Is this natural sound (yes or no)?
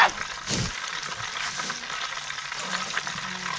yes